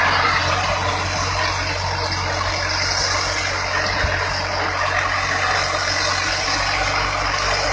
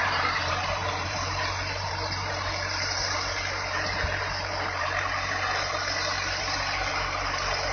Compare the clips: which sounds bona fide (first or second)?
first